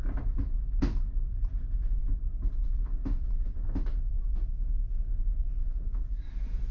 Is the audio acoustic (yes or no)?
yes